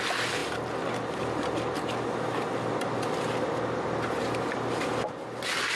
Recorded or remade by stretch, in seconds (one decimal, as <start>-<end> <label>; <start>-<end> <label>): 0.0-5.8 recorded